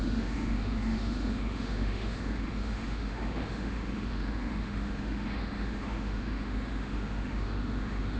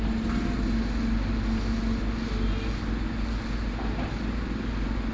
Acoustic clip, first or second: second